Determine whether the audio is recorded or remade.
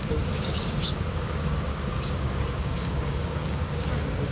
remade